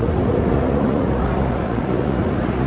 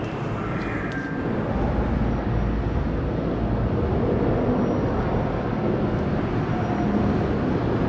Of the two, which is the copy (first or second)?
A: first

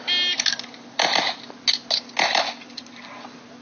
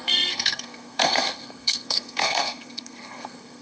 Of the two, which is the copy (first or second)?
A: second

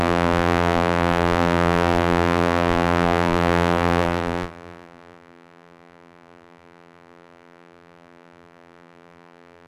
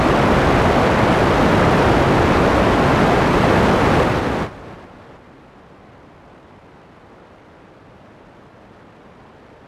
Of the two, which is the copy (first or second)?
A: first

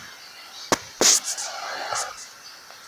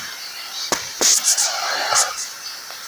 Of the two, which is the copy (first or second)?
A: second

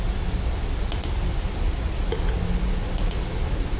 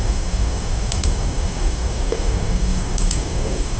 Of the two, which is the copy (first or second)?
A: second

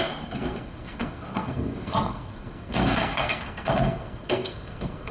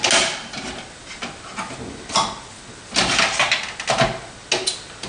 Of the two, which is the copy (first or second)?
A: first